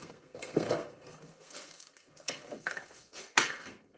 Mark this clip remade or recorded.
remade